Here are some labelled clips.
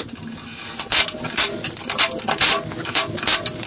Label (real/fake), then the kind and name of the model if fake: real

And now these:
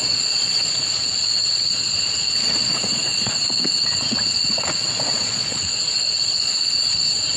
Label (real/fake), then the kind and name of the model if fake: fake, vocoder, Vocos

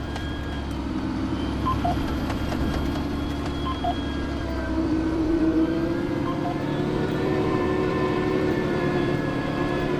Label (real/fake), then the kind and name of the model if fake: fake, vocoder, BigVGAN v2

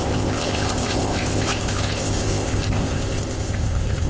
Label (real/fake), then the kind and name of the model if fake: fake, codec, ZipCodec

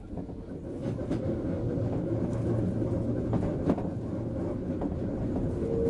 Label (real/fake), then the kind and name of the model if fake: real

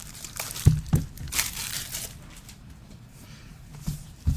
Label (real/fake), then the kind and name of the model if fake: fake, vocoder, BigVGAN v2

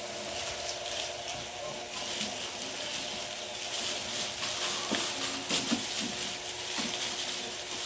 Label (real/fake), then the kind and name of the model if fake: real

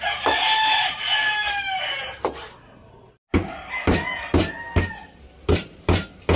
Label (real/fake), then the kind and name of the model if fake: real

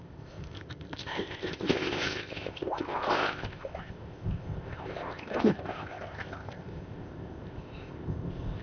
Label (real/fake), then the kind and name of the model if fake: fake, codec, ZipCodec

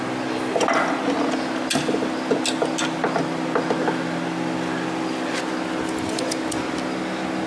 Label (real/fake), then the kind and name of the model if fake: real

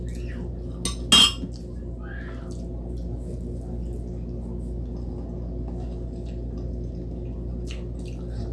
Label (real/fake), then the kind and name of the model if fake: real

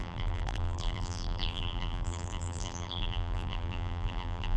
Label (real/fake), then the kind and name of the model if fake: fake, vocoder, BigVGAN v2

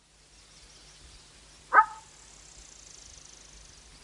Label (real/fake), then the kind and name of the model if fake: real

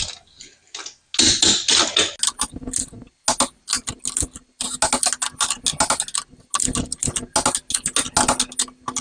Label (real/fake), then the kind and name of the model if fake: real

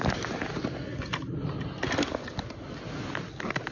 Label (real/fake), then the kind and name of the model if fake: real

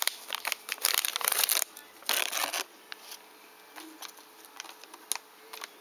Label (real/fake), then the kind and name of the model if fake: real